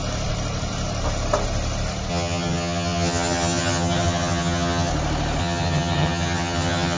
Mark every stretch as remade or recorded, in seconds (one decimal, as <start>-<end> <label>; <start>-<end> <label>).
0.0-2.1 recorded; 2.1-4.9 remade; 4.9-5.4 recorded; 5.4-7.0 remade